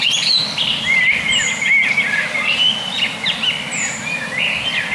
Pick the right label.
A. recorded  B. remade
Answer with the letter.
A